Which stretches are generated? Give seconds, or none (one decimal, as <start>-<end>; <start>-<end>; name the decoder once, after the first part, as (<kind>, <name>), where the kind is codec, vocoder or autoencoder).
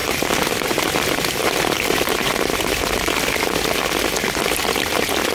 0.0-3.2 (vocoder, BigVGAN v2)